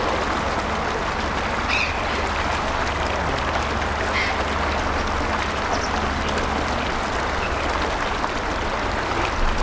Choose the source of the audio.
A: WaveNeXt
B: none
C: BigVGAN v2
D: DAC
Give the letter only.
B